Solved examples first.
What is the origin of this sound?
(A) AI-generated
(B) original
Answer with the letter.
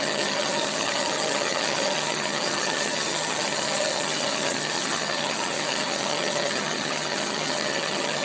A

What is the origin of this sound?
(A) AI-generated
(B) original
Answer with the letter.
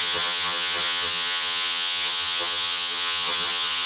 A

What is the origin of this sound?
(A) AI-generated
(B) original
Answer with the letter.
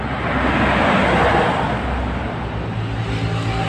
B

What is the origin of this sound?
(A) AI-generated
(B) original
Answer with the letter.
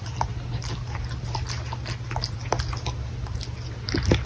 B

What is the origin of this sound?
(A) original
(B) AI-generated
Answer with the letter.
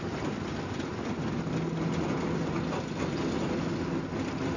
A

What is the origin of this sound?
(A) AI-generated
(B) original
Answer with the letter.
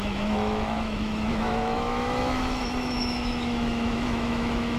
A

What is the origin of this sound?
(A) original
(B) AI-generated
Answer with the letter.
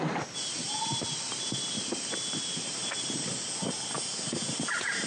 A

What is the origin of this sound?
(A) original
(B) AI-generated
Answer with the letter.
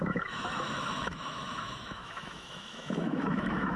B